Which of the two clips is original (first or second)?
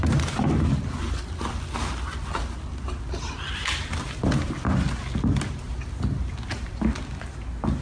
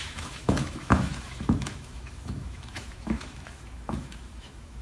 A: first